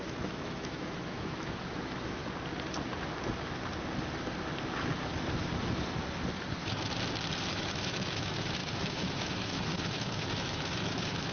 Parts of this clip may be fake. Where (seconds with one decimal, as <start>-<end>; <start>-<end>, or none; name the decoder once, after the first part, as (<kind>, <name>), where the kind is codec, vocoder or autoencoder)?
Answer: 0.0-2.2 (autoencoder, DAC-VAE); 7.5-11.3